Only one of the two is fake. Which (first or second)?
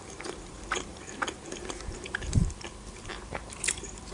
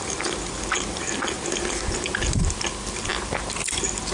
first